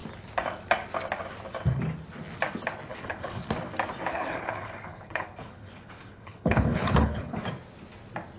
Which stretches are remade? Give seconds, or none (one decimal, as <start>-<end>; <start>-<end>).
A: 2.9-3.5; 4.1-7.4

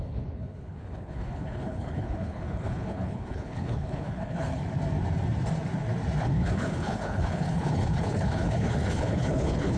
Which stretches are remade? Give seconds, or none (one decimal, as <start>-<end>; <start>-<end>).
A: 0.0-4.6; 6.2-9.8

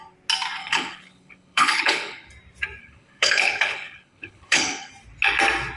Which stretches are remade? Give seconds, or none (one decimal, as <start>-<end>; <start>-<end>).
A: 0.6-2.3; 2.8-4.9

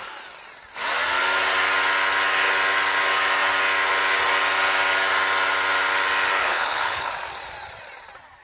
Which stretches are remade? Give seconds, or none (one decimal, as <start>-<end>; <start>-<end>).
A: 6.4-7.1

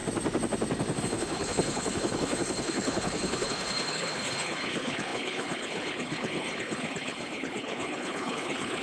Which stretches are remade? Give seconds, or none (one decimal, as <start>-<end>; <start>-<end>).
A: 1.0-8.8

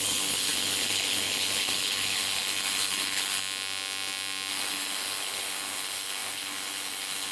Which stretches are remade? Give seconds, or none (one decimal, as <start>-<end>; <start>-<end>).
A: 0.0-3.4; 4.5-7.3

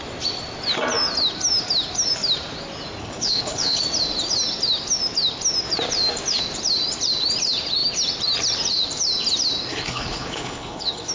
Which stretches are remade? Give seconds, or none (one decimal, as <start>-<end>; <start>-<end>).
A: 3.0-3.8; 9.7-11.1

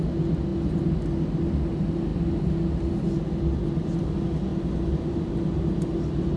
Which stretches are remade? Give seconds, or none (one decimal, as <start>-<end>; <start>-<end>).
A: none